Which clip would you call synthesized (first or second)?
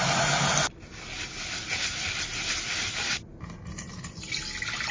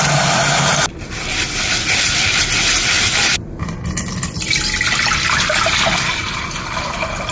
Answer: second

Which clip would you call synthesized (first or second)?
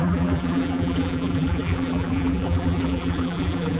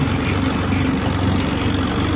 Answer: first